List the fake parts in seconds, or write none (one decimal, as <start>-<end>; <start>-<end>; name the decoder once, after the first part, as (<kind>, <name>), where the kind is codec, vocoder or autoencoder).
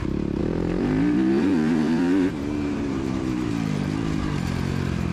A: 0.4-3.5 (vocoder, BigVGAN v2)